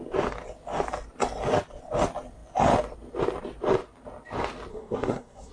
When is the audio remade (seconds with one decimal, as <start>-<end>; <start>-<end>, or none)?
4.7-5.5